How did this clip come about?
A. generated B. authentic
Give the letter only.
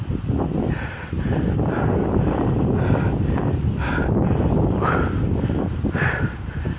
B